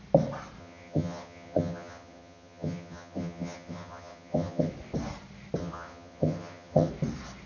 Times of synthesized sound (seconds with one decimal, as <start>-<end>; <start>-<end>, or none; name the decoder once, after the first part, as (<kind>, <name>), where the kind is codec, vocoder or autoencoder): 0.6-4.7 (vocoder, HiFi-GAN); 5.6-6.9